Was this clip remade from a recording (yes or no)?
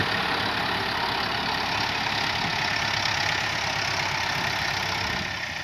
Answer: no